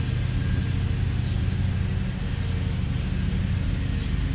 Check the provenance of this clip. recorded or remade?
recorded